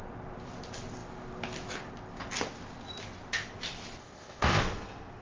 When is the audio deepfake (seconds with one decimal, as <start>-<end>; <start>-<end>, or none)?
4.0-4.6